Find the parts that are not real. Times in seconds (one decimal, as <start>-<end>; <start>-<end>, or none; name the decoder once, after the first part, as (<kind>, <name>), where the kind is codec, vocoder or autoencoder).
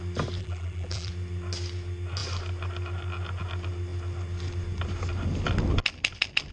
0.4-1.1 (vocoder, BigVGAN v2)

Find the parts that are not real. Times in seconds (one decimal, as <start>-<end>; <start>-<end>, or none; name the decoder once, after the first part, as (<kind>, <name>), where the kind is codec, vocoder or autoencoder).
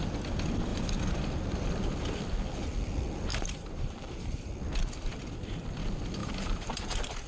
0.7-1.2 (vocoder, BigVGAN v2); 3.3-4.5; 6.2-7.3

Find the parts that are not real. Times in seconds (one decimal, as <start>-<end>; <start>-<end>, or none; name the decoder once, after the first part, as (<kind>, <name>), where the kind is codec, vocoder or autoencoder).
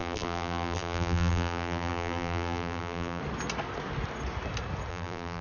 0.0-3.2 (vocoder, BigVGAN v2); 4.9-5.4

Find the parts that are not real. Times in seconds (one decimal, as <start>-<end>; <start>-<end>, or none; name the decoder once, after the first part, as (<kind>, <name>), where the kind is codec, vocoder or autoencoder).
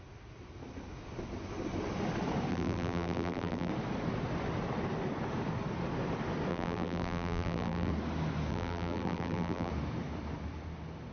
2.5-3.7 (vocoder, BigVGAN v2); 6.5-7.9; 8.5-9.7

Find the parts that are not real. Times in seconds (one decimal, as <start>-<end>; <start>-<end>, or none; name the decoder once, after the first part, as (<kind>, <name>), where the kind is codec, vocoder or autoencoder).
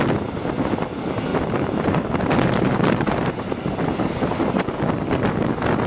1.3-4.8 (vocoder, BigVGAN v2)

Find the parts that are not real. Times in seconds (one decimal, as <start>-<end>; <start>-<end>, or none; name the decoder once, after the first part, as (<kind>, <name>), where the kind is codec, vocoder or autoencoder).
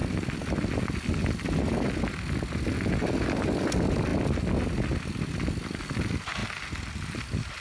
none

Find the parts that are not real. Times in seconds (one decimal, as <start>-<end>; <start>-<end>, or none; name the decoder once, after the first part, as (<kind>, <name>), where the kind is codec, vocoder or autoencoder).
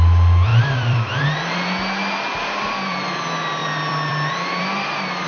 0.5-1.5 (vocoder, BigVGAN v2); 2.4-3.0; 3.6-5.3